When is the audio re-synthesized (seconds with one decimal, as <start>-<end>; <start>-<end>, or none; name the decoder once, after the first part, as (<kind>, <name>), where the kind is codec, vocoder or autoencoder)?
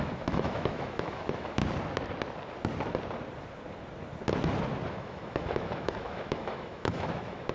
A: 0.0-1.6 (autoencoder, DAC-VAE); 4.9-7.5